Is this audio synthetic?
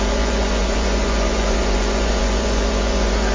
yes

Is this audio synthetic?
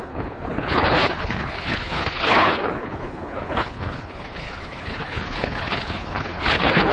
yes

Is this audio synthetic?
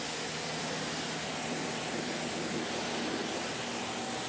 no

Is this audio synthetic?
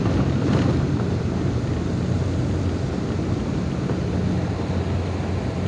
no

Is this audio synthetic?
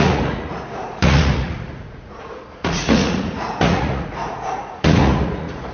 yes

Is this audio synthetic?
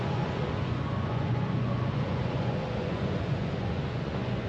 yes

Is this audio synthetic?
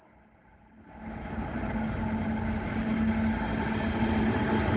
no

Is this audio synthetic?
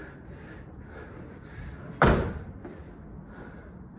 no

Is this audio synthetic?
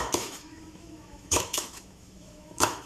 yes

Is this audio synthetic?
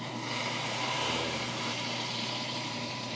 yes